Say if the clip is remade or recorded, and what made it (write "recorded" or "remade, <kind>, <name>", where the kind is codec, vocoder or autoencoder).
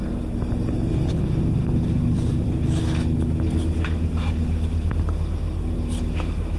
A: recorded